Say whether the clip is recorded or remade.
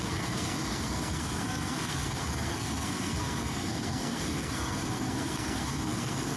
remade